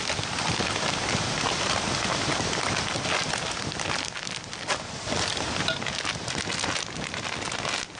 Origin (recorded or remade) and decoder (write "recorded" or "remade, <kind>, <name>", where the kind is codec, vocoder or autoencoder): recorded